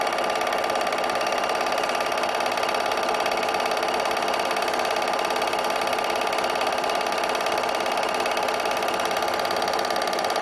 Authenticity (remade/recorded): recorded